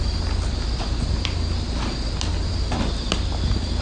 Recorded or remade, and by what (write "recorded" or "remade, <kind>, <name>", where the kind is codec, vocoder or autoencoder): recorded